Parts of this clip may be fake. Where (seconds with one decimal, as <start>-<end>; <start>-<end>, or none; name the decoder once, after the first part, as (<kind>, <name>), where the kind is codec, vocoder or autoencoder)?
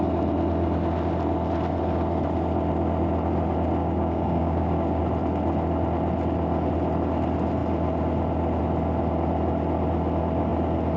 3.8-5.0 (codec, DAC)